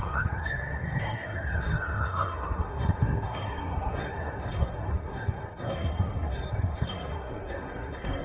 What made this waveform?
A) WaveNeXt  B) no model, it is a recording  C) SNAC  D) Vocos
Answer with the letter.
C